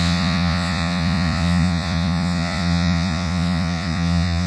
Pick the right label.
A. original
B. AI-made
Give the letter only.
B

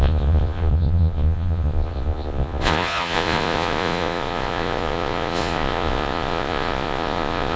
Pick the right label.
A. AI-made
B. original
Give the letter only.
A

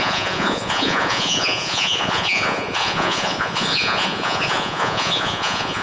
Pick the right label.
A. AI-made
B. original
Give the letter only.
A